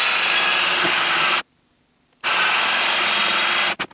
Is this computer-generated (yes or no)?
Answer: no